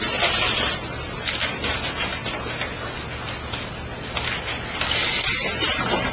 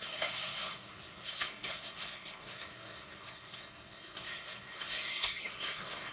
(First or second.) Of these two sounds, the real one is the first